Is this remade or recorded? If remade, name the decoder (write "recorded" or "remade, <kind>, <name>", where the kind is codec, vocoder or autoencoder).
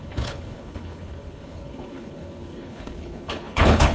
remade, codec, HILCodec